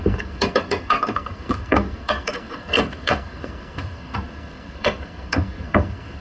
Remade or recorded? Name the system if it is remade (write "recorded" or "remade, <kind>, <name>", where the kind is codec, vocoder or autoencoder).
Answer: remade, codec, SNAC